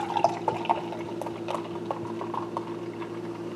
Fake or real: real